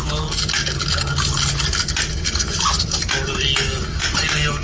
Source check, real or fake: real